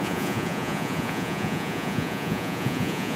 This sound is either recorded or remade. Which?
remade